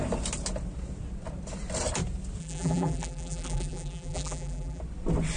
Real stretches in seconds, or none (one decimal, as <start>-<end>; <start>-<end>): 0.0-2.4; 4.8-5.4